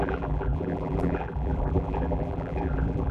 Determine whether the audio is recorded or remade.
remade